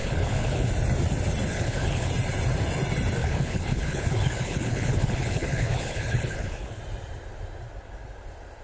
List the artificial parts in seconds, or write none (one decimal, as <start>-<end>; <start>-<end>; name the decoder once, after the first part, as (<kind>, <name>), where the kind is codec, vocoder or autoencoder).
0.0-0.7 (codec, HILCodec); 1.5-2.1; 3.2-6.8